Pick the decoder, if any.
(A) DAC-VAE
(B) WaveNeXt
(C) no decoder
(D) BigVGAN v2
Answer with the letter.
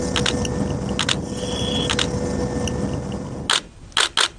C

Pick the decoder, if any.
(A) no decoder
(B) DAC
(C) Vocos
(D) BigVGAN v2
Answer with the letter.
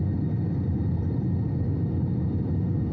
A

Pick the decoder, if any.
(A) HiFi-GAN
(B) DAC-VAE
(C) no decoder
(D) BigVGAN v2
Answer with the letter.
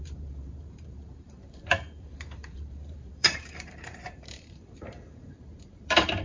D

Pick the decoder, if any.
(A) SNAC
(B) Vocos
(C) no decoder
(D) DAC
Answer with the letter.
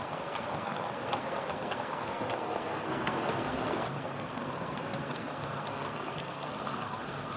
A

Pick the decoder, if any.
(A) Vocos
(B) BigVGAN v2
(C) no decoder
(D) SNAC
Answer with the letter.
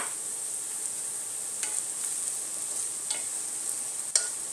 C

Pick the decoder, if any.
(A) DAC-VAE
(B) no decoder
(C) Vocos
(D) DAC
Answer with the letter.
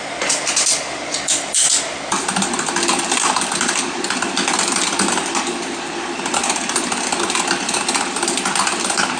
B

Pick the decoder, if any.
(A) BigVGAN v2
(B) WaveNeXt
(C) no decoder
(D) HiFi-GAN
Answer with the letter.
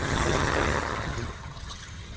D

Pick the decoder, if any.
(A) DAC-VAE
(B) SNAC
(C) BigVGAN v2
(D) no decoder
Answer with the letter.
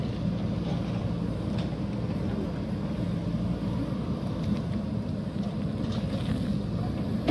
D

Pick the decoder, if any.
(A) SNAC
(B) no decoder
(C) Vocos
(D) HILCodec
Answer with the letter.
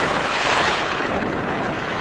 D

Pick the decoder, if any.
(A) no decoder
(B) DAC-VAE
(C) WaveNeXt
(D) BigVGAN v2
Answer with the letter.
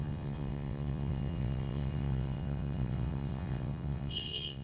C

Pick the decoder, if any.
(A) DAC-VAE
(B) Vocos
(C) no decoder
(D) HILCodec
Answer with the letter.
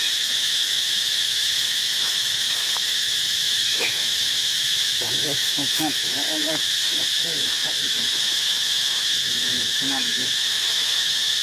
A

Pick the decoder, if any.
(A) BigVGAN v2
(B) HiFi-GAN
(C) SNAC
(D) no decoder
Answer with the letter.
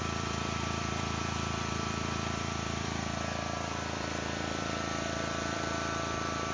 A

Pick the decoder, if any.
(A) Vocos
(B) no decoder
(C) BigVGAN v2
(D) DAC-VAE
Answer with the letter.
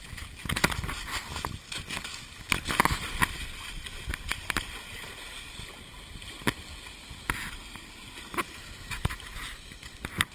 B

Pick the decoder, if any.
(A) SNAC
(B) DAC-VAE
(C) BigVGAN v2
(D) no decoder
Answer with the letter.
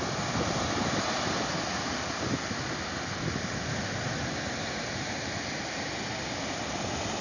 D